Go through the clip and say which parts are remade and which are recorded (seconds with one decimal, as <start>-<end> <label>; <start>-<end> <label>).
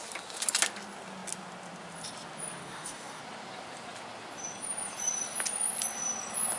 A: 0.0-2.6 recorded; 2.6-3.2 remade; 3.2-6.6 recorded